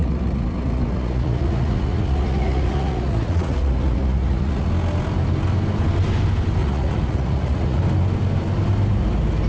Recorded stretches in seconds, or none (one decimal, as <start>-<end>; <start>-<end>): 4.7-6.6; 7.8-9.5